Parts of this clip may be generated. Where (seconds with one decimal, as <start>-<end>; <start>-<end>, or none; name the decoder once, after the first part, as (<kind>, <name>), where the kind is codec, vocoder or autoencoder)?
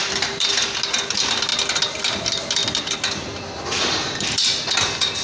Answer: 0.0-0.5 (vocoder, BigVGAN v2); 2.6-4.5